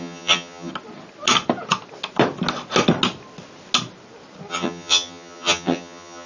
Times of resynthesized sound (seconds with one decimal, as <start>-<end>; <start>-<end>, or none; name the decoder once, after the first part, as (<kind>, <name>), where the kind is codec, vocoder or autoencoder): 0.0-0.7 (vocoder, HiFi-GAN); 4.5-6.3